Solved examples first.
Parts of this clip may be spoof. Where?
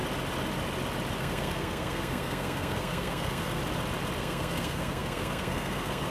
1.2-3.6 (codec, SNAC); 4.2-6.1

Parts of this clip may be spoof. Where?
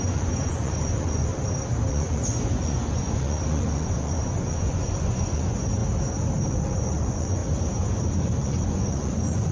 0.0-1.3 (vocoder, Vocos); 1.9-5.8; 6.5-7.4; 8.1-9.5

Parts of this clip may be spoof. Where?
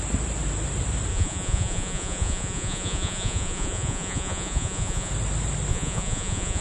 1.1-5.1 (vocoder, Vocos); 5.7-6.6